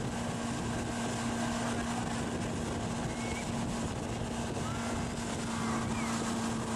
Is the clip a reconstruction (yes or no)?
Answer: no